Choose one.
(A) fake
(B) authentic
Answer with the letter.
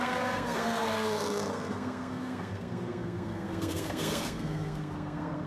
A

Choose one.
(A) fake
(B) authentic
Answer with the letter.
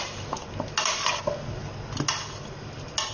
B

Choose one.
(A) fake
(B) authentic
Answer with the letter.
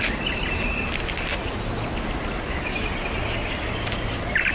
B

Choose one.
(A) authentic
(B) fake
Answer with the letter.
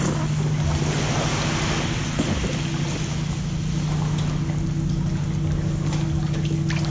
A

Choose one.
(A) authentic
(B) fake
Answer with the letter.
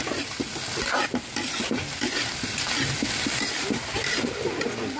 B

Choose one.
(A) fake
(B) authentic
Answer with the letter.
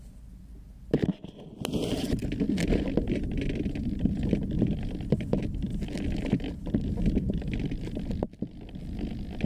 B